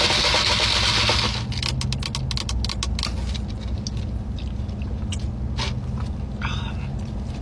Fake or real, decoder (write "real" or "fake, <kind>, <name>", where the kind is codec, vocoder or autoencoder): real